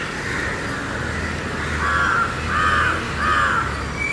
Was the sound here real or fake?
real